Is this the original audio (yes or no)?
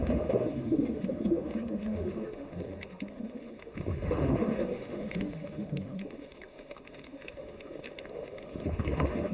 no